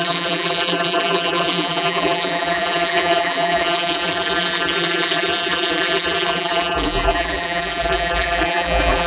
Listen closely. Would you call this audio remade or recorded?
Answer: remade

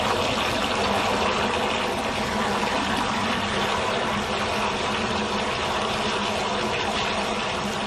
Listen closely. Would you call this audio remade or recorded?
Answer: recorded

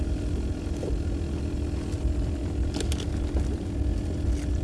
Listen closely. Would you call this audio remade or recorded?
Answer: recorded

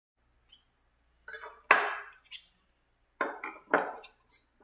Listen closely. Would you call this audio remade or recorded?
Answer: recorded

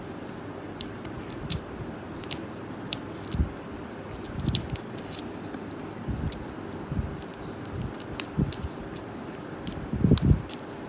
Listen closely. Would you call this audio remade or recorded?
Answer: recorded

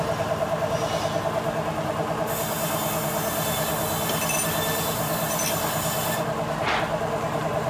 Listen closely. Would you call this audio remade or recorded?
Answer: recorded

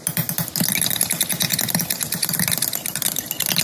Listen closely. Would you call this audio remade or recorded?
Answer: recorded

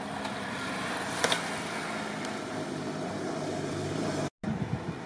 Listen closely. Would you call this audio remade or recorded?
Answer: recorded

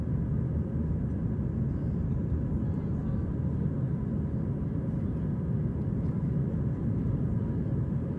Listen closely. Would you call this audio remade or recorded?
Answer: recorded